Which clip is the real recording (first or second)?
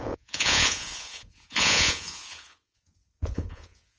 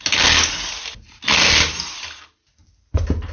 second